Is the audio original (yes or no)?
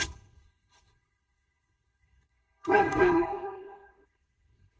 no